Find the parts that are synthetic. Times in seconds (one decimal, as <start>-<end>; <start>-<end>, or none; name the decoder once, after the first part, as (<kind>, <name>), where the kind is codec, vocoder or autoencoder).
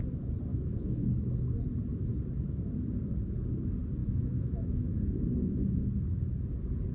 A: 0.5-1.1 (autoencoder, DAC-VAE); 4.0-5.0; 5.4-5.9